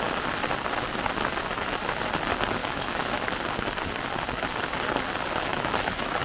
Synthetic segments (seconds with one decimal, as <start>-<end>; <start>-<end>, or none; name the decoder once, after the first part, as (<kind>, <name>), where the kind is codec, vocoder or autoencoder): 2.6-3.2 (autoencoder, DAC-VAE); 5.5-6.2